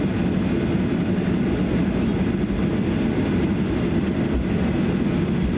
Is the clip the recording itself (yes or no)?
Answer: yes